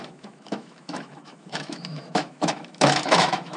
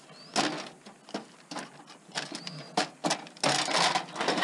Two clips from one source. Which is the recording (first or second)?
second